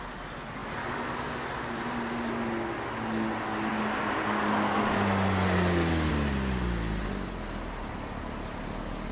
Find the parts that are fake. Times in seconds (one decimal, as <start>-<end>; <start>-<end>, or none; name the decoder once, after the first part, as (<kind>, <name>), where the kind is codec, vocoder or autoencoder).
none